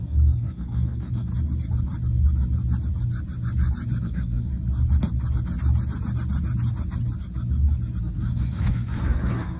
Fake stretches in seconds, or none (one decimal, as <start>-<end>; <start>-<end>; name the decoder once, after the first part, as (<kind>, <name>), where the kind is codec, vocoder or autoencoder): 0.0-1.3 (codec, SNAC); 4.0-4.5; 8.0-9.6